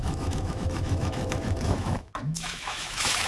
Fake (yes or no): yes